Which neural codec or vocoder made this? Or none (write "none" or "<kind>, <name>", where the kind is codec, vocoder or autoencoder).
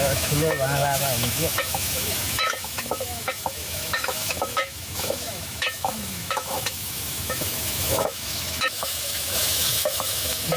autoencoder, DAC-VAE